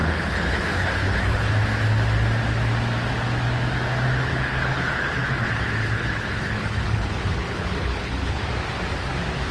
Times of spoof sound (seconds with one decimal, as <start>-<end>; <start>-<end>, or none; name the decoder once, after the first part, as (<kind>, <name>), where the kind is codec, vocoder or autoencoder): 0.0-1.5 (codec, HILCodec); 4.3-8.4